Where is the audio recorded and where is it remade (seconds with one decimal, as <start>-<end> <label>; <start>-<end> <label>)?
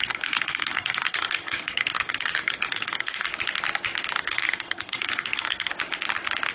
0.0-3.3 remade; 3.3-4.2 recorded; 4.2-5.7 remade; 5.7-6.5 recorded